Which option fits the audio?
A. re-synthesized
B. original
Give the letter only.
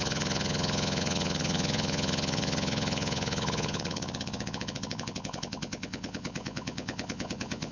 A